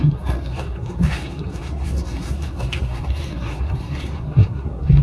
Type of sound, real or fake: fake